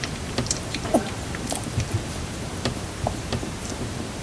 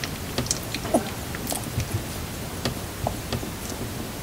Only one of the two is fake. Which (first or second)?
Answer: first